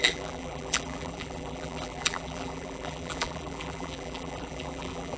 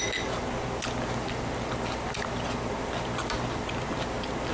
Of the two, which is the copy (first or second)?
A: first